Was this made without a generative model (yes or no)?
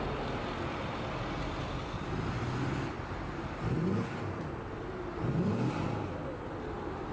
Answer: yes